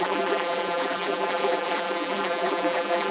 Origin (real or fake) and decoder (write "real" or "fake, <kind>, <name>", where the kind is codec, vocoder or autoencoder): fake, vocoder, BigVGAN v2